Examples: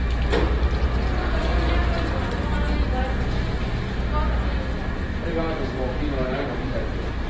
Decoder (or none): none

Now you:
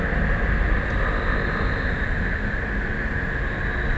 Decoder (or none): none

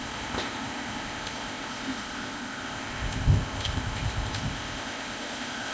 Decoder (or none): codec, ZipCodec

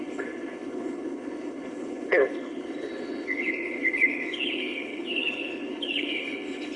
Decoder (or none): codec, HILCodec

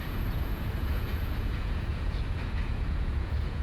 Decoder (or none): vocoder, Vocos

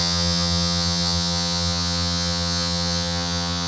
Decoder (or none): vocoder, HiFi-GAN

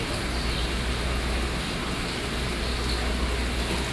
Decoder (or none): none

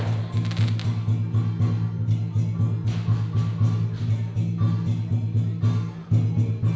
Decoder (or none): none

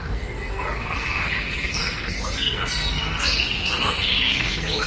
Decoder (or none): codec, SNAC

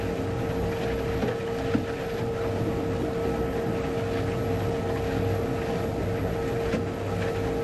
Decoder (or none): none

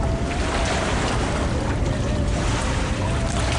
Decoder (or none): vocoder, BigVGAN v2